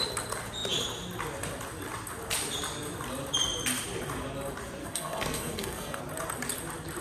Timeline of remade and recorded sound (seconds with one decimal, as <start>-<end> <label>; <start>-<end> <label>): 0.0-4.8 recorded; 4.8-6.0 remade; 6.0-7.0 recorded